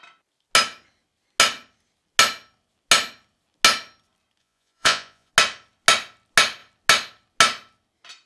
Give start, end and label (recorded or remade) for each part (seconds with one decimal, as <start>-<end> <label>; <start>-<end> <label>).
0.0-4.4 recorded; 4.4-5.3 remade; 5.3-8.3 recorded